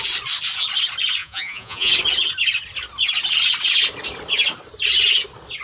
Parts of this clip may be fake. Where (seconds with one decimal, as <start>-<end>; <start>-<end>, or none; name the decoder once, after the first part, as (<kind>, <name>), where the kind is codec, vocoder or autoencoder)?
1.2-1.9 (vocoder, Vocos)

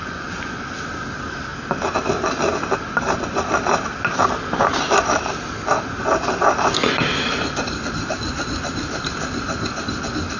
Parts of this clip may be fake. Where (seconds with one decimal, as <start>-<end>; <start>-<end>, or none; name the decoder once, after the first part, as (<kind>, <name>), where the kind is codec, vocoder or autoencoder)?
0.0-0.6 (vocoder, Vocos)

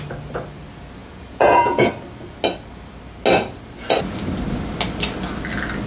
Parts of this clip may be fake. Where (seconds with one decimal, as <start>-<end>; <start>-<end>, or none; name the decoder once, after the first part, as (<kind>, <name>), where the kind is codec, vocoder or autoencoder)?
1.0-1.9 (vocoder, Vocos)